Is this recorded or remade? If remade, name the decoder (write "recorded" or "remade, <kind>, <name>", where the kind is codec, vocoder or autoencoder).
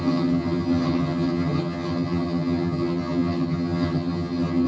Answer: remade, vocoder, HiFi-GAN